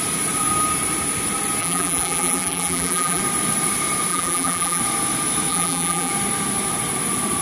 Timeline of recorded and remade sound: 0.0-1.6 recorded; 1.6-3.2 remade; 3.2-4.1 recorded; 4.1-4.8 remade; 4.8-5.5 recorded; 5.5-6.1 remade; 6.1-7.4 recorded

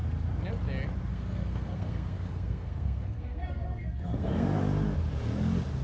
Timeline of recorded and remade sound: 0.0-1.1 recorded; 1.1-4.6 remade; 4.6-5.8 recorded